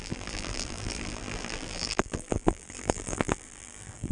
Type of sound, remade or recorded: remade